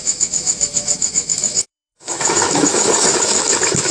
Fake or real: fake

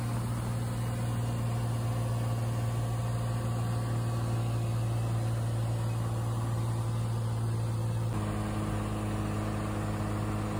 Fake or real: real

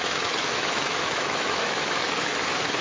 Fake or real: fake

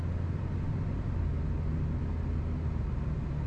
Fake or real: real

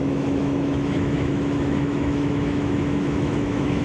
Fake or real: fake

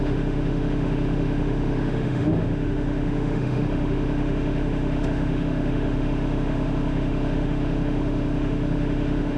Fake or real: fake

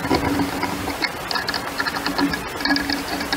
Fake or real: real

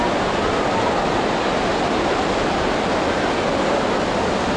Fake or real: real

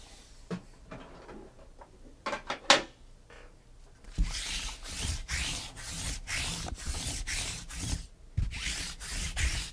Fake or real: real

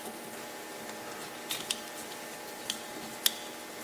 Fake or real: real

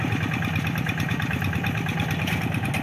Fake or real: real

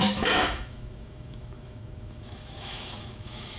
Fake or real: fake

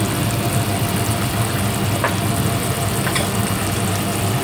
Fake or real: real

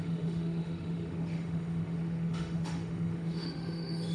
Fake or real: fake